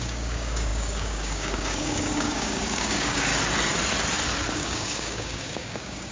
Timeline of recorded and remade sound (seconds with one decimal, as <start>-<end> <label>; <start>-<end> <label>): 0.0-3.3 remade; 3.3-4.5 recorded; 4.5-6.1 remade

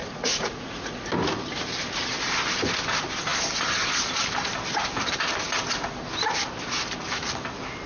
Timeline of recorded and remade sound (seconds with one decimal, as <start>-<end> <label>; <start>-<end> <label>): 0.0-1.0 remade; 1.0-7.9 recorded

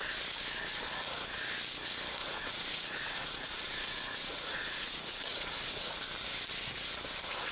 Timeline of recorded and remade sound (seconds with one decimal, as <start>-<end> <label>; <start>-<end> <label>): 0.0-2.2 recorded; 2.2-6.0 remade; 6.0-7.5 recorded